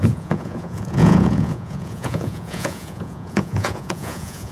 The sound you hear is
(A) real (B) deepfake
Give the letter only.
B